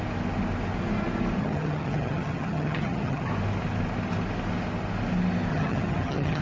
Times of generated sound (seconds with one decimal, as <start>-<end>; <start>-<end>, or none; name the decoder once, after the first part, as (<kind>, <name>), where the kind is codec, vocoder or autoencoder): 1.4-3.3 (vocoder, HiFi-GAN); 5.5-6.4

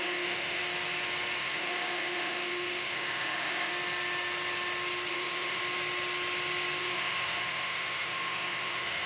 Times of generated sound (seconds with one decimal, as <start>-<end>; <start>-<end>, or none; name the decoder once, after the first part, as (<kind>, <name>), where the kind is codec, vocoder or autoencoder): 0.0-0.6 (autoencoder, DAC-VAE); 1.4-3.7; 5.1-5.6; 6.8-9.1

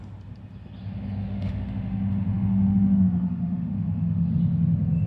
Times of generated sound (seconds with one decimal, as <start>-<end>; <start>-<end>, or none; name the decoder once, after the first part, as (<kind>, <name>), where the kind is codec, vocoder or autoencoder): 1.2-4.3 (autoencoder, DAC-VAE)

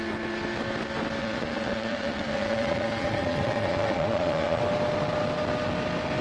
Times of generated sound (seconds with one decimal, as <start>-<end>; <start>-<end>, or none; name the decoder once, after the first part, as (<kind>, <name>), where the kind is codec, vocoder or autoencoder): 1.2-4.6 (vocoder, Vocos)